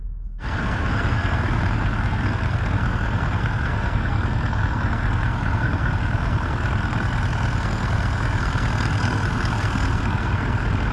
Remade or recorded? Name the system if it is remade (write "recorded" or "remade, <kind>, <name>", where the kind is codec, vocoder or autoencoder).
remade, codec, SNAC